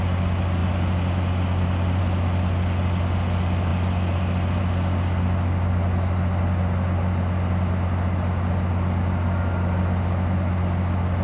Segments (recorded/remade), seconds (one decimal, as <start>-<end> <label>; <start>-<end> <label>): 0.0-11.2 recorded